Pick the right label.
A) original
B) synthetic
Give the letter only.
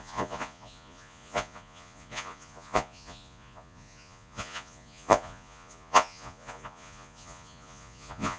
B